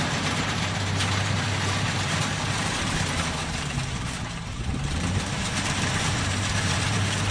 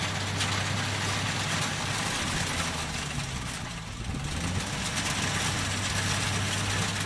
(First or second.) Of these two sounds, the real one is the second